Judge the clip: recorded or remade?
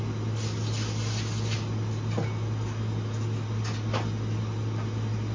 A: recorded